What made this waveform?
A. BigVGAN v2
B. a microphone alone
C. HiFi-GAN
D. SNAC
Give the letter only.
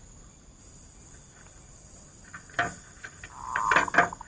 B